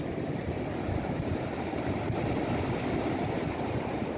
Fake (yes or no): no